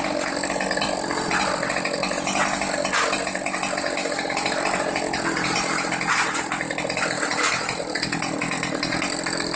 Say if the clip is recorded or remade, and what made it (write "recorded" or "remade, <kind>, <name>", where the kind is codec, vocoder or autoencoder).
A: recorded